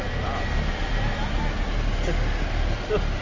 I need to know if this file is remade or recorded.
recorded